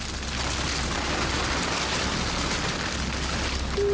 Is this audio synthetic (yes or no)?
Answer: no